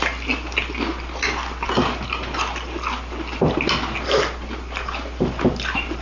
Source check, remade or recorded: recorded